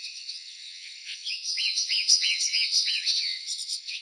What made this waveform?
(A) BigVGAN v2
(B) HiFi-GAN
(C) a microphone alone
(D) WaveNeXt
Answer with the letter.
D